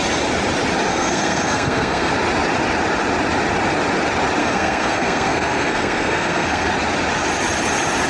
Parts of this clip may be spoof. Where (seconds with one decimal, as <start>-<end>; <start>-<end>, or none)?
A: 0.9-2.1; 4.4-6.7